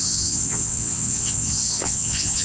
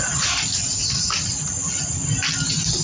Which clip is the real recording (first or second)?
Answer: second